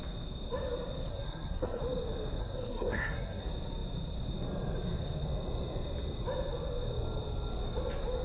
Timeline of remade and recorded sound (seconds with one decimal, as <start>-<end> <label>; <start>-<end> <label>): 0.0-1.1 recorded; 1.1-1.8 remade; 1.8-2.4 recorded; 2.4-3.4 remade; 3.4-8.2 recorded